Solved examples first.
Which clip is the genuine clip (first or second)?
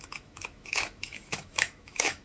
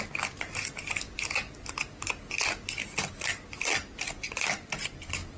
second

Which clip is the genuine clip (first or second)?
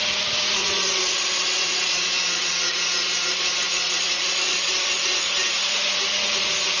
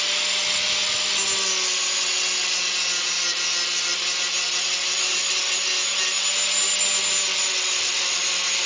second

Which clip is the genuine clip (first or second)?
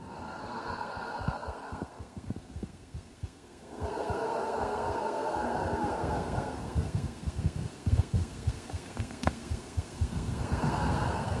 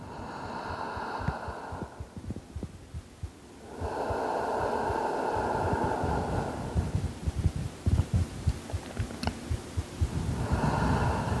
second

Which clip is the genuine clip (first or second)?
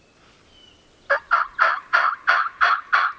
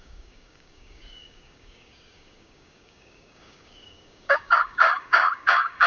first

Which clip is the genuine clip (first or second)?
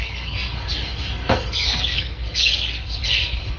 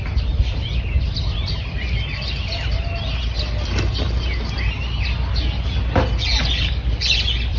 second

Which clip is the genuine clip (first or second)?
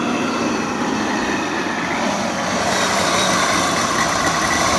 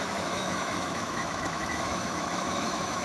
first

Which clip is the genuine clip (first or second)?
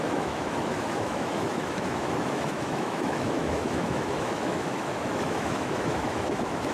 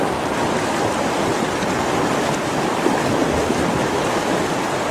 second